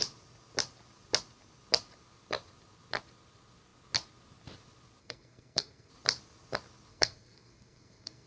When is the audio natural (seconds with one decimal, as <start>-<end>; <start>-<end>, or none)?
0.0-5.0; 5.9-6.9